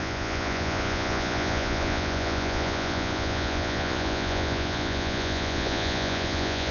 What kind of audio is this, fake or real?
fake